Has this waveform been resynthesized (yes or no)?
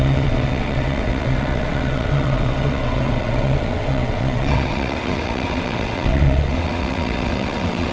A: yes